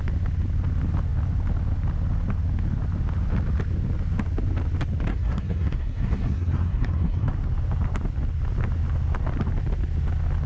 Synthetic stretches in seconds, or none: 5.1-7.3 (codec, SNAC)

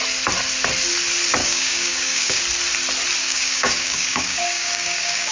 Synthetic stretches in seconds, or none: 1.4-2.4 (codec, DAC); 3.2-5.3

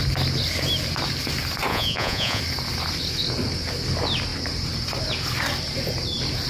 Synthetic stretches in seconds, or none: 1.7-2.4 (vocoder, Vocos)

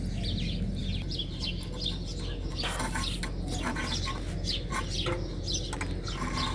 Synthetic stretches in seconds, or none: none

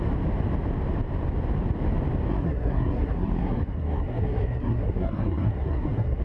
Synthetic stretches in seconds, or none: 2.3-6.2 (codec, SNAC)

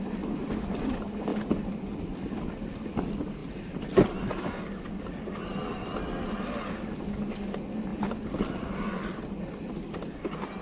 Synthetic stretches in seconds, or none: none

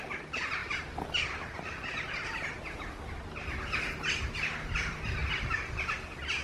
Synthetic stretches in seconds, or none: none